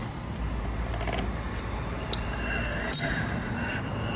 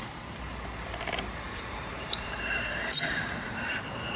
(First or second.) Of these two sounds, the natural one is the first